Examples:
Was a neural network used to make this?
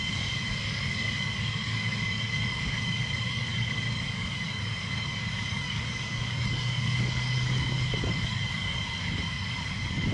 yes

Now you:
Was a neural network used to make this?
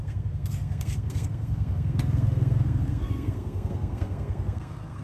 yes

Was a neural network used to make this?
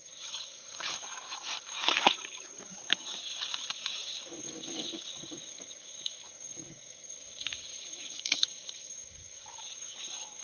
yes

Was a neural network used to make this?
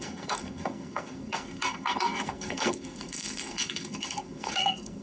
yes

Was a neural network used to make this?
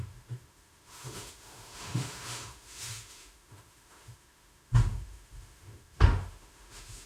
yes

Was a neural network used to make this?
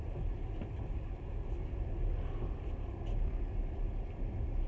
no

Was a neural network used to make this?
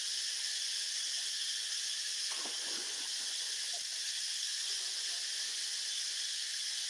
yes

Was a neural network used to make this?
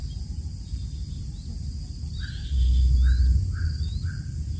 no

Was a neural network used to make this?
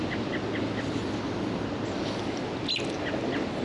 no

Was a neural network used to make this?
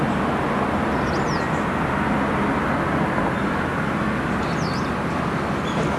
no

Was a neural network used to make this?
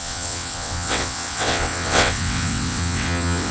yes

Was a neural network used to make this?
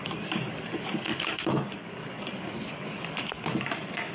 yes